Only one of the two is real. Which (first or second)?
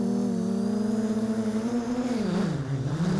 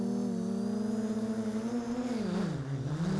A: second